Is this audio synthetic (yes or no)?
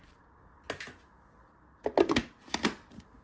no